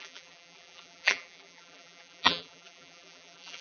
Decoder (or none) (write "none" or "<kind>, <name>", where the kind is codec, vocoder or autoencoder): vocoder, BigVGAN v2